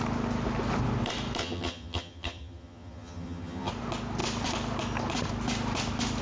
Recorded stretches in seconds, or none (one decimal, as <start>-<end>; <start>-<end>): 0.0-1.4; 3.7-6.2